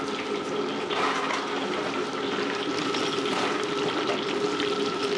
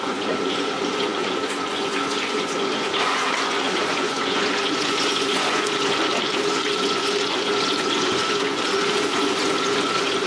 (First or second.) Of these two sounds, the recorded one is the first